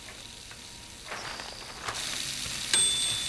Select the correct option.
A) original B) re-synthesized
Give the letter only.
A